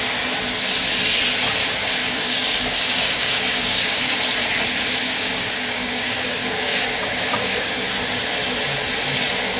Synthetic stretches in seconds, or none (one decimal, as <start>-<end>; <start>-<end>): 2.0-4.2; 5.0-7.7